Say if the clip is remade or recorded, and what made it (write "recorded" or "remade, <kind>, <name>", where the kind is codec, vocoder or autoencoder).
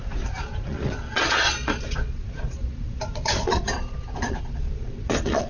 remade, vocoder, Vocos